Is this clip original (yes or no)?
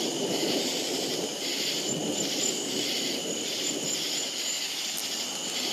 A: yes